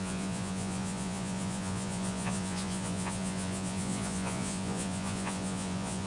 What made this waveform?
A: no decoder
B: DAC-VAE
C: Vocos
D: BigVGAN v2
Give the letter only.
C